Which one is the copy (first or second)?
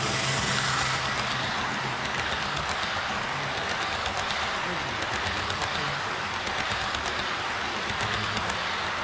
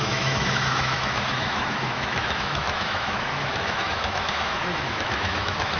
second